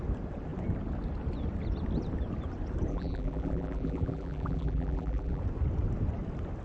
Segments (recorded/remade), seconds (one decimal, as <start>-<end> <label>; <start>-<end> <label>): 0.0-2.9 recorded; 2.9-5.4 remade; 5.4-6.6 recorded